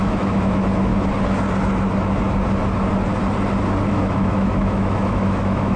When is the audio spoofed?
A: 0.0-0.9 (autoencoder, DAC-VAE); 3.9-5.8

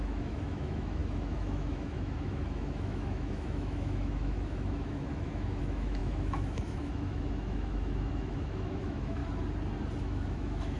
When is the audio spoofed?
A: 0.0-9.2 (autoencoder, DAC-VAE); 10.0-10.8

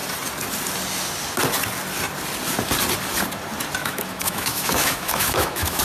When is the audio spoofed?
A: 3.8-5.8 (autoencoder, DAC-VAE)

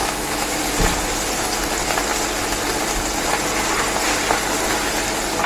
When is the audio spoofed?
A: 0.0-0.6 (autoencoder, DAC-VAE)